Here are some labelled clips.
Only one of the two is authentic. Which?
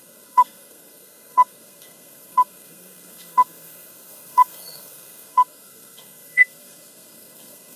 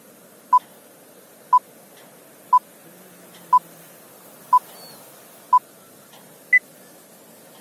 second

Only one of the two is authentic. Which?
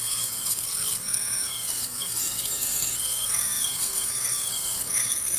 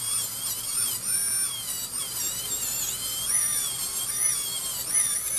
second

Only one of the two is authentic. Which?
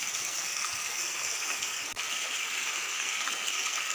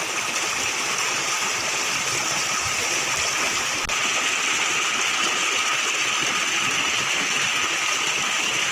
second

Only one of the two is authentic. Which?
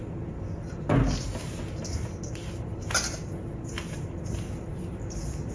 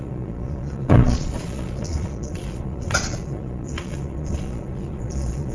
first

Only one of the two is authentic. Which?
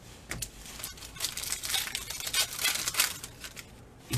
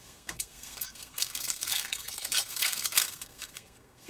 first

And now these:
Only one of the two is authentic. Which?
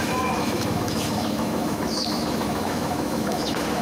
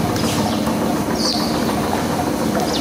second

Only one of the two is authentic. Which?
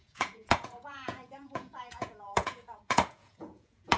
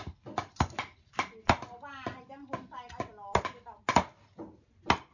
second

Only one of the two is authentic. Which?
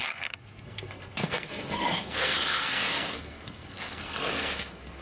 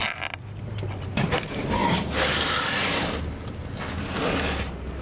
second